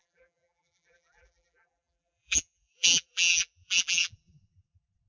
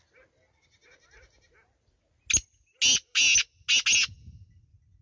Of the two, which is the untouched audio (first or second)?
second